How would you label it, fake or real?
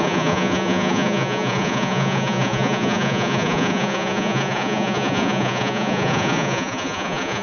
fake